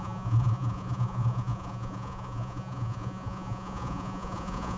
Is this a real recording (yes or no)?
no